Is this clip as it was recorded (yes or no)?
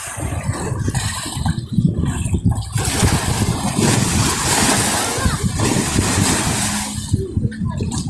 yes